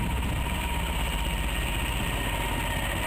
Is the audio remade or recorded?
recorded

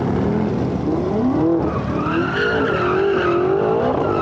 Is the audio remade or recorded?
recorded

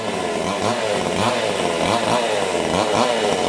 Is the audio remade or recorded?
recorded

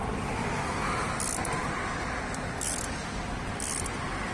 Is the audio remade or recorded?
recorded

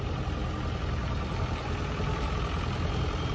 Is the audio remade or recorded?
recorded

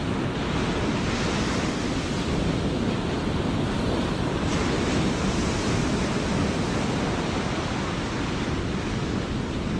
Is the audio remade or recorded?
recorded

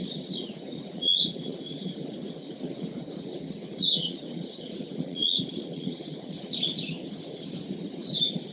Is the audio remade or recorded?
remade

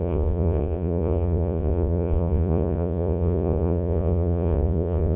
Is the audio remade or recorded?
remade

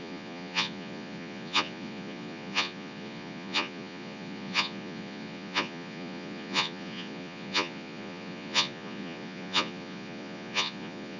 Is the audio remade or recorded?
remade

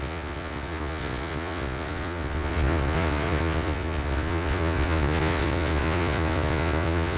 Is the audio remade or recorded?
remade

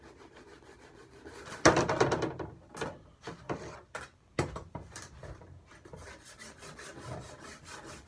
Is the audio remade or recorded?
recorded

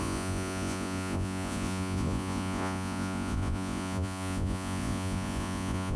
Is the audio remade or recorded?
remade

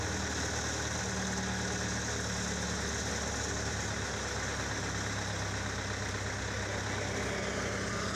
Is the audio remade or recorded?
recorded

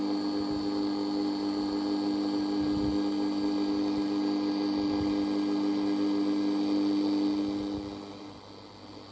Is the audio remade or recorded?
recorded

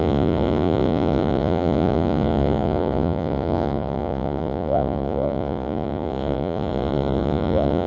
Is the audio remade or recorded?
remade